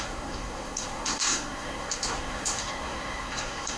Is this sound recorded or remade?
remade